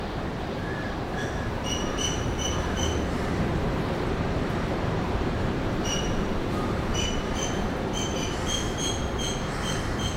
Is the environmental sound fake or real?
fake